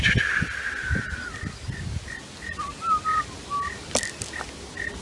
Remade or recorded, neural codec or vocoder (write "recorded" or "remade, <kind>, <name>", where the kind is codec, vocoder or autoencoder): recorded